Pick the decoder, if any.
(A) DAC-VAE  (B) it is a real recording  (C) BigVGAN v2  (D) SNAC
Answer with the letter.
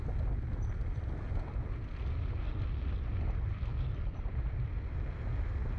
B